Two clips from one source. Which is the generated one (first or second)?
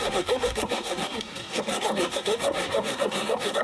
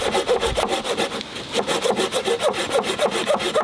first